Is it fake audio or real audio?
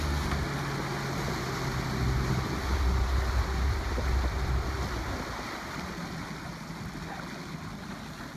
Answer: real